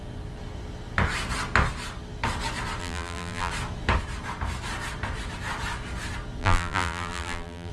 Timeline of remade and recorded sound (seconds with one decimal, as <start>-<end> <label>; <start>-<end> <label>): 0.0-2.8 recorded; 2.8-3.5 remade; 3.5-6.4 recorded; 6.4-7.7 remade